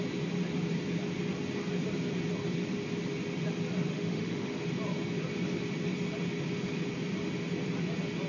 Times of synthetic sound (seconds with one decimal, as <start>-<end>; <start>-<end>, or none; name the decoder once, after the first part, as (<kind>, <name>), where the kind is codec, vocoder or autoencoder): 3.9-4.6 (autoencoder, DAC-VAE)